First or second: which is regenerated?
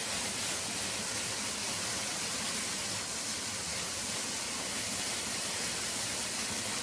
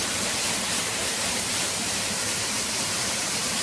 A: second